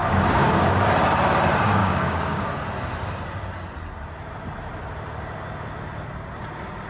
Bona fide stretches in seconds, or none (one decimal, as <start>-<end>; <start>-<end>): 0.8-1.8; 2.6-6.9